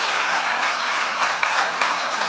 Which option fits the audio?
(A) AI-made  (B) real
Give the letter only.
A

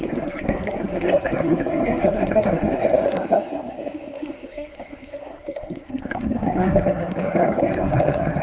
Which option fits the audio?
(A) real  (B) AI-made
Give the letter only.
B